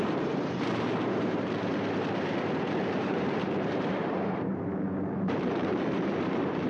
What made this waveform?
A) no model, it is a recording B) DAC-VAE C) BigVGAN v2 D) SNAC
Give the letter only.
C